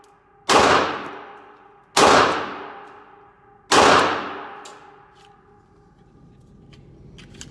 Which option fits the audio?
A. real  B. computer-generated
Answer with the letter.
A